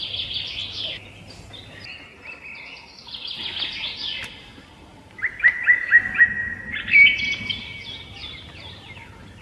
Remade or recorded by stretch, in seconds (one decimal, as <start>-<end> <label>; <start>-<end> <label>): 0.0-4.9 recorded; 4.9-5.6 remade; 5.6-8.2 recorded; 8.2-9.4 remade

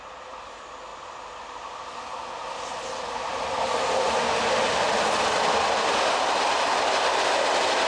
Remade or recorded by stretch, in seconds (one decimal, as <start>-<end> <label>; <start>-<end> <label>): 0.0-7.9 recorded

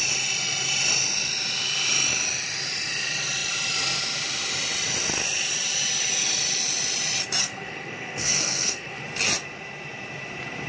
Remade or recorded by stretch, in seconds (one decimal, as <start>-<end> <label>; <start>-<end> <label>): 0.0-7.4 recorded; 7.4-9.0 remade; 9.0-10.7 recorded

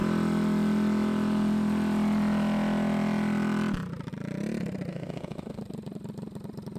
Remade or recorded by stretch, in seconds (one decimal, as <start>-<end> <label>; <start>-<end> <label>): 0.0-4.9 recorded; 4.9-5.6 remade; 5.6-6.8 recorded

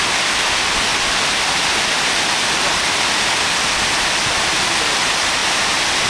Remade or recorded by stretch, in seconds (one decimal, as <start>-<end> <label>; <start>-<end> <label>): 0.0-0.9 recorded; 0.9-4.1 remade; 4.1-6.1 recorded